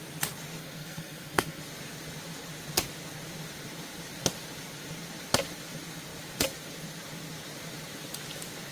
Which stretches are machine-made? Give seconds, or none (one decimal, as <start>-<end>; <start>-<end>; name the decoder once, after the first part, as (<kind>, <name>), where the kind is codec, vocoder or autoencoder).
0.6-1.6 (codec, SNAC)

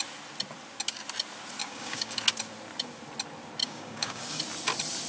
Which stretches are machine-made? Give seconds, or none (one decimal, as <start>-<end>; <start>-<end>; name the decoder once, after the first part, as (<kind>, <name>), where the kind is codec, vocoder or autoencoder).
1.6-2.2 (codec, DAC); 3.6-4.4